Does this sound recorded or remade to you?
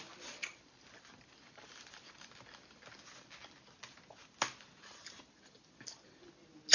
recorded